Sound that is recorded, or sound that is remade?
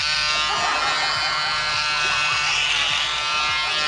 recorded